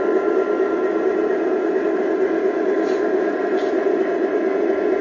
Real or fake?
real